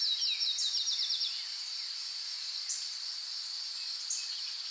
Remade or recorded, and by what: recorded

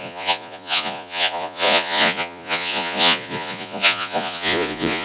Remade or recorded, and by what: remade, vocoder, Vocos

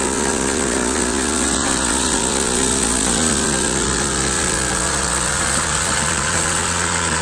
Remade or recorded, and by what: remade, vocoder, Vocos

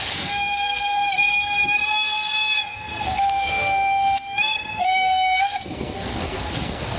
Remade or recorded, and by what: remade, codec, SNAC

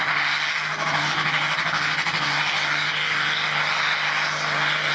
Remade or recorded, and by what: recorded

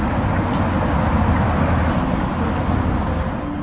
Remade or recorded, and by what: recorded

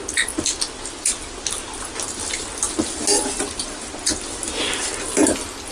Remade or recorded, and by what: recorded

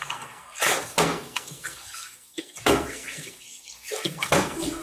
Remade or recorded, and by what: remade, codec, SNAC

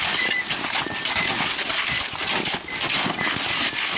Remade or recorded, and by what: recorded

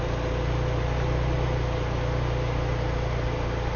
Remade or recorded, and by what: recorded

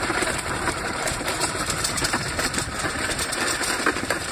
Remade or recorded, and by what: remade, vocoder, BigVGAN v2